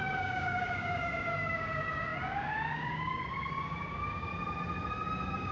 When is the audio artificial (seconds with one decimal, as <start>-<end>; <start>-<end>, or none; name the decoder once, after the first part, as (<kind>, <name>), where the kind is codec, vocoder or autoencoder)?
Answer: 0.0-4.3 (codec, DAC); 4.9-5.5